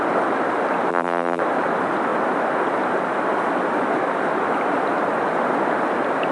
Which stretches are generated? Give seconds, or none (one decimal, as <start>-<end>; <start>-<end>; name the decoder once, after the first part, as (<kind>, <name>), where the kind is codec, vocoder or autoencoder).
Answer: 0.9-1.4 (vocoder, BigVGAN v2)